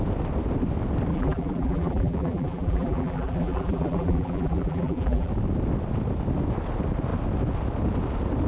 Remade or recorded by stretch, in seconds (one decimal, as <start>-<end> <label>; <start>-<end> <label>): 0.0-1.1 recorded; 1.1-5.3 remade; 5.3-8.5 recorded